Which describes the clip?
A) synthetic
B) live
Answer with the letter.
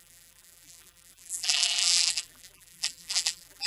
A